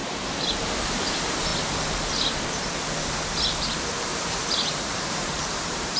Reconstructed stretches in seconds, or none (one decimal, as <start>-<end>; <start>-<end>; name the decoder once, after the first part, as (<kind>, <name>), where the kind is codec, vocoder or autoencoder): 0.0-0.7 (vocoder, BigVGAN v2); 4.1-6.0